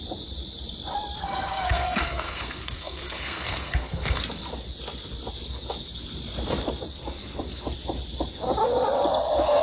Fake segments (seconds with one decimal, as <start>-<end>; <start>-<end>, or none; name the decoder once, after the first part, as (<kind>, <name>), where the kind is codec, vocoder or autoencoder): 1.2-4.2 (codec, SNAC)